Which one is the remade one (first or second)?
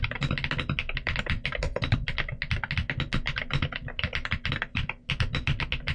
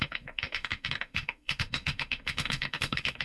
second